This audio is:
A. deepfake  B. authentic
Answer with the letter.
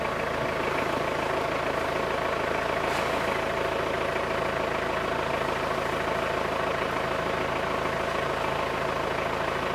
B